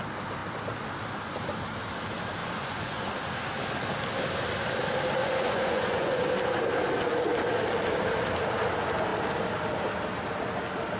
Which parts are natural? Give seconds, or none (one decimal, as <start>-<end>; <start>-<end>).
0.0-2.4; 3.1-5.2; 6.2-11.0